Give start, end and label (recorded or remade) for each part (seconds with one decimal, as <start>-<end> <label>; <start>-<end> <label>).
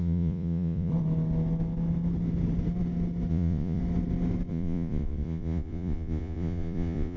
0.0-0.9 remade; 0.9-3.3 recorded; 3.3-3.8 remade; 3.8-4.5 recorded; 4.5-7.2 remade